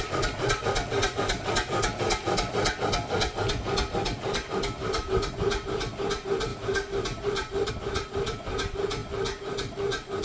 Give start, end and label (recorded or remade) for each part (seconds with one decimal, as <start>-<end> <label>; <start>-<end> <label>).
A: 0.0-6.5 recorded; 6.5-7.7 remade; 7.7-10.2 recorded